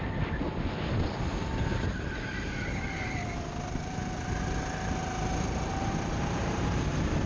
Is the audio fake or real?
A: real